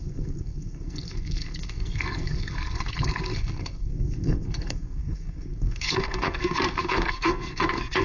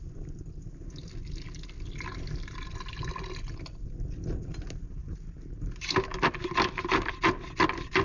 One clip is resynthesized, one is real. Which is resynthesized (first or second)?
first